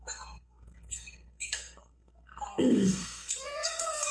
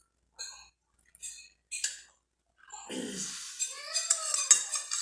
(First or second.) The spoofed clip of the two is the first